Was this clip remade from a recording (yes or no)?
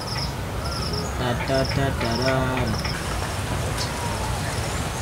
no